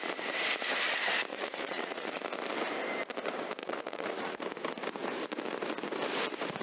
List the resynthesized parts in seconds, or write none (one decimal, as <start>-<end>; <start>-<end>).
1.3-2.2; 3.6-4.4